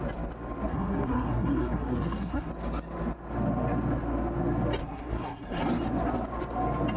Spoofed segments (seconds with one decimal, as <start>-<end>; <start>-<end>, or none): 0.7-2.5; 4.8-5.6